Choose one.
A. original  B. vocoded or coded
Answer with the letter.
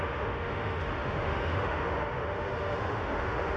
B